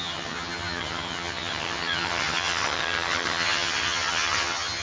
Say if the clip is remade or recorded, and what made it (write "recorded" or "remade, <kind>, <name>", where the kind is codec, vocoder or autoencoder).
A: remade, vocoder, HiFi-GAN